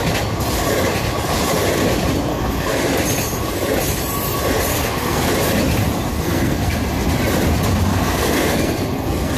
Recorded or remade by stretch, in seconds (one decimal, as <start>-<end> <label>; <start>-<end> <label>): 0.0-2.3 recorded; 2.3-2.8 remade; 2.8-4.7 recorded; 4.7-5.3 remade; 5.3-6.1 recorded; 6.1-6.8 remade; 6.8-7.9 recorded; 7.9-9.4 remade

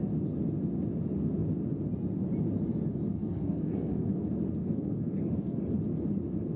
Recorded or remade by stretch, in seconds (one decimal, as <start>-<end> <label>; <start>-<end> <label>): 0.0-3.1 recorded; 3.1-4.1 remade; 4.1-4.6 recorded; 4.6-5.6 remade; 5.6-6.6 recorded

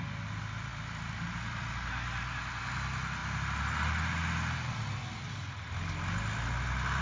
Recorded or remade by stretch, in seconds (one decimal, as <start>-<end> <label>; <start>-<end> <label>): 0.0-7.0 recorded

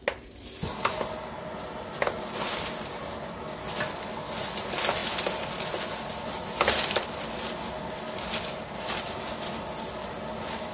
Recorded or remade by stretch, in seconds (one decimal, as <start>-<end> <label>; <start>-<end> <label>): 0.0-10.7 recorded

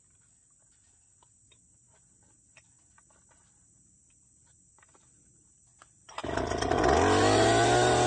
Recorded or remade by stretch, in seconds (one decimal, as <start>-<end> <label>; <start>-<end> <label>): 0.0-8.1 recorded

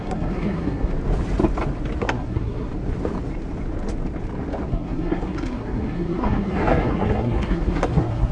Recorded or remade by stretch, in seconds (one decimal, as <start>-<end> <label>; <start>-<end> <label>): 0.0-0.9 remade; 0.9-2.0 recorded; 2.0-2.7 remade; 2.7-4.7 recorded; 4.7-8.3 remade

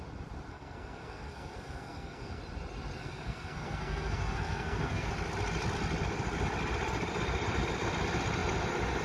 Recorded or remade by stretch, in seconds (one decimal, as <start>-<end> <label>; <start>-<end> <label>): 0.0-0.5 recorded; 0.5-2.4 remade; 2.4-3.0 recorded; 3.0-5.1 remade; 5.1-9.0 recorded